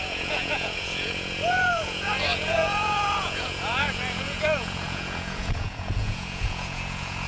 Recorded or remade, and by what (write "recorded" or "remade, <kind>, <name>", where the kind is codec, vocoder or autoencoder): remade, vocoder, Vocos